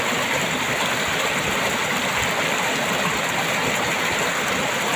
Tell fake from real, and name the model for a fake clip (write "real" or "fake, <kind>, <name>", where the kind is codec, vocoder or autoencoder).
real